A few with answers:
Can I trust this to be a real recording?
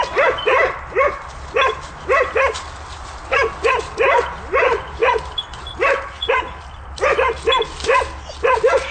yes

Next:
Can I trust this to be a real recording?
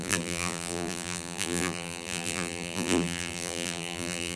no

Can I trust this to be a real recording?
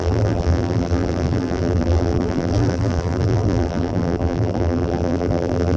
no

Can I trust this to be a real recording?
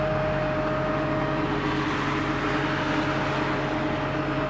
yes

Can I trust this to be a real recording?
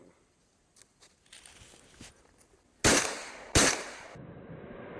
yes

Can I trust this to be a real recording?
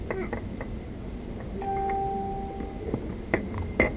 yes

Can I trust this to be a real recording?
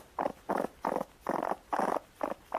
yes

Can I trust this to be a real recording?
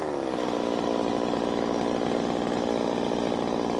yes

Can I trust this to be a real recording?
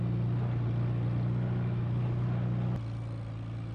yes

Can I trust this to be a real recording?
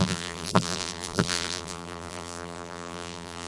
no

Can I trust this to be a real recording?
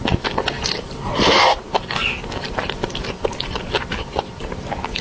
yes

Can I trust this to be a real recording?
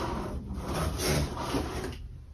no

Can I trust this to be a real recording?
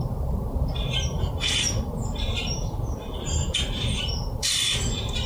no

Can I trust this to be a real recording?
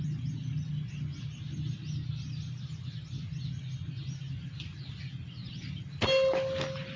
yes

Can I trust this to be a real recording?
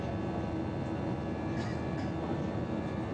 yes